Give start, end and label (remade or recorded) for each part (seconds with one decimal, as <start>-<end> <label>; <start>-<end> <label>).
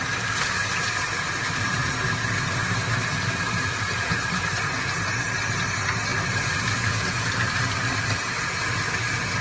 0.0-6.1 recorded; 6.1-6.7 remade; 6.7-9.4 recorded